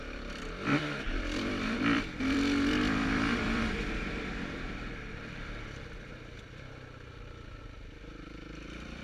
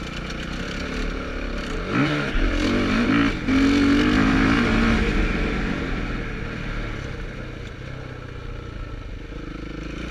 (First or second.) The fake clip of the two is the first